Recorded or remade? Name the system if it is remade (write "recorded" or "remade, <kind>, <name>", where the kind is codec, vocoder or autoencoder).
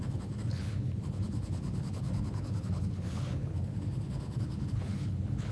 remade, codec, HILCodec